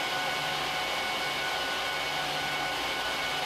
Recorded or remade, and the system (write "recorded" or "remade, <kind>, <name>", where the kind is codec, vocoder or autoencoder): recorded